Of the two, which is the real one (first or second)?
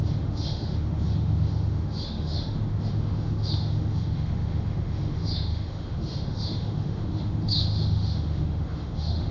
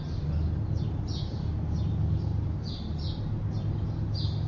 second